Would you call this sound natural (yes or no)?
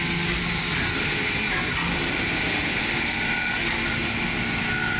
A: yes